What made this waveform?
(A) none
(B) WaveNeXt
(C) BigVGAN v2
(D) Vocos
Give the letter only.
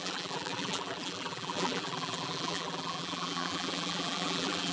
C